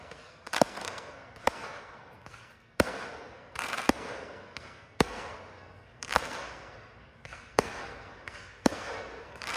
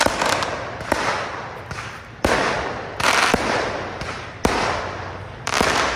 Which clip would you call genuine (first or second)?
second